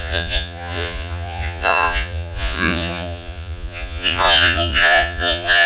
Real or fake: fake